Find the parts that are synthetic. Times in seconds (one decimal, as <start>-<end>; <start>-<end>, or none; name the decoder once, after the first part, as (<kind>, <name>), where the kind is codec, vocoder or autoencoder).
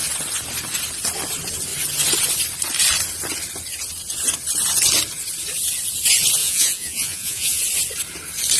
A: 6.4-7.6 (vocoder, Vocos)